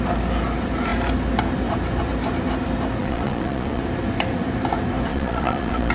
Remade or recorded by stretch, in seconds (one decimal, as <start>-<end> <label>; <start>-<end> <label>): 0.0-3.0 recorded; 3.0-3.8 remade; 3.8-5.1 recorded; 5.1-5.9 remade